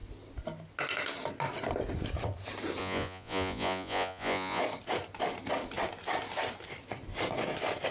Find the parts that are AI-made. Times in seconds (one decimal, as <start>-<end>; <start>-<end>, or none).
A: 2.8-4.6